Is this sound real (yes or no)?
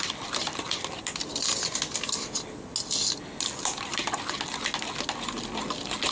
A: yes